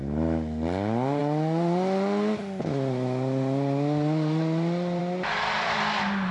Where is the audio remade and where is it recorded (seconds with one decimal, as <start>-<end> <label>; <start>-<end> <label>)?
0.0-6.3 recorded